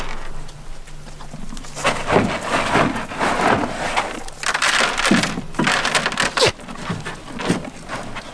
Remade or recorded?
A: recorded